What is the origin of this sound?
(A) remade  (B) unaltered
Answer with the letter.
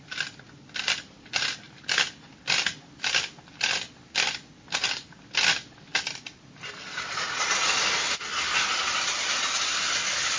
B